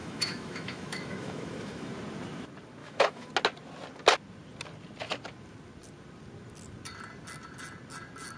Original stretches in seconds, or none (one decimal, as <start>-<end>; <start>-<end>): 1.9-2.8; 3.3-8.4